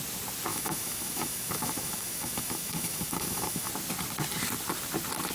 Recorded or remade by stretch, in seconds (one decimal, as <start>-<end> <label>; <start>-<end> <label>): 0.0-0.5 recorded; 0.5-3.7 remade; 3.7-5.3 recorded